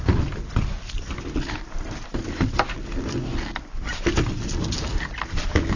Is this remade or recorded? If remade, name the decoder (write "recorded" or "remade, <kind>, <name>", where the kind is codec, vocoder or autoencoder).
recorded